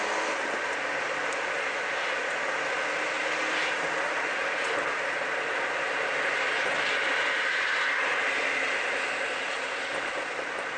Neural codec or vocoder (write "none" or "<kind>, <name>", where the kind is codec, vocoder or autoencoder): none